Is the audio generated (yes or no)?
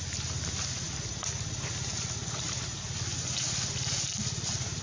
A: no